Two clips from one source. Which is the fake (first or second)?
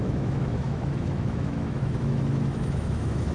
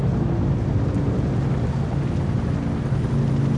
first